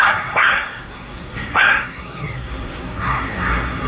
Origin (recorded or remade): remade